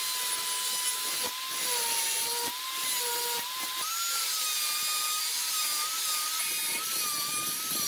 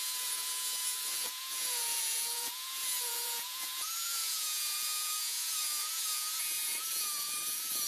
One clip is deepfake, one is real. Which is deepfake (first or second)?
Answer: second